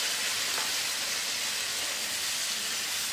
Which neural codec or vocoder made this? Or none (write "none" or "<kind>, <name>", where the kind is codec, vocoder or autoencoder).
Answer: none